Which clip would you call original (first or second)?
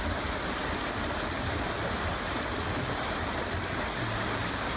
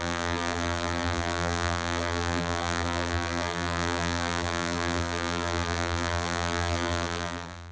first